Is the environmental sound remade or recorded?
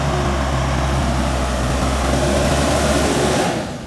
recorded